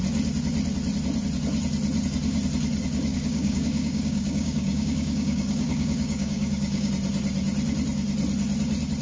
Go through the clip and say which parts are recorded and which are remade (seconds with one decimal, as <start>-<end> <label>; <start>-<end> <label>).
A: 0.0-3.1 recorded; 3.1-6.9 remade; 6.9-9.0 recorded